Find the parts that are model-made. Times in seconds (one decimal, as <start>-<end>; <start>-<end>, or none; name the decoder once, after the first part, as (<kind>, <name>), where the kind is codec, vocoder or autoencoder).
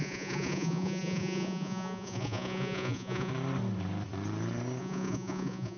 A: 0.0-3.3 (vocoder, Vocos); 4.8-5.8